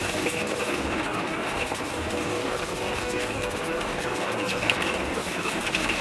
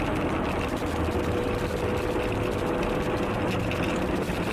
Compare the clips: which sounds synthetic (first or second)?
first